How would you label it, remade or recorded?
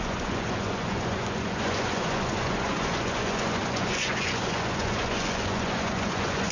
remade